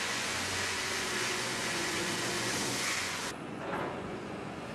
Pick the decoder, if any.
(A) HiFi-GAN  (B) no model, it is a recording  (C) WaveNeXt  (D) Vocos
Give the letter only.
D